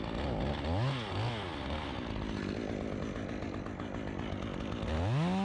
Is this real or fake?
real